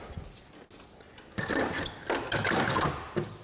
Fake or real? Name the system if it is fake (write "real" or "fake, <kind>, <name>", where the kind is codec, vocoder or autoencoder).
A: real